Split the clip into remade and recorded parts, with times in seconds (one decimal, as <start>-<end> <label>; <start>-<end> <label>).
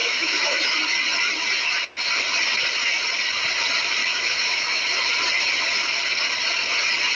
0.0-0.7 remade; 0.7-4.0 recorded; 4.0-4.8 remade; 4.8-7.1 recorded